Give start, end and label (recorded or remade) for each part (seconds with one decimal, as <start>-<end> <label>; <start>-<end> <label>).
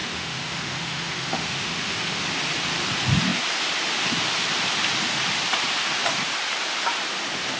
0.0-2.2 remade; 2.2-7.6 recorded